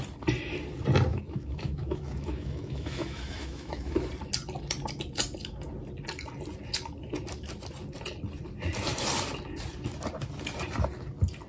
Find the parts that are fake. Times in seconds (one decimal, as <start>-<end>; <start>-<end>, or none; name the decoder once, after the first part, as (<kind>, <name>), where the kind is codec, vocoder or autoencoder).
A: 1.1-4.1 (autoencoder, DAC-VAE)